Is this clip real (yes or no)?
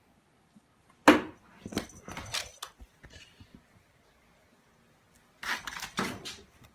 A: yes